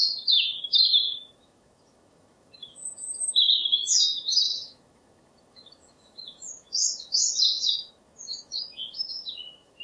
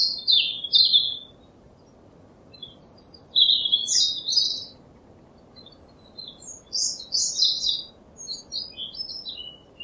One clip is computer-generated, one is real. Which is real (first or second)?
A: second